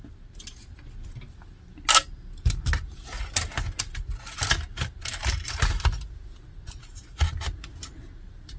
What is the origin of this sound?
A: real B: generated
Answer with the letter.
A